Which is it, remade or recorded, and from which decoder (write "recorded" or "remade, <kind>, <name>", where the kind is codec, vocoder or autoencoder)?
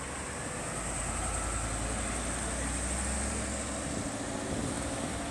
recorded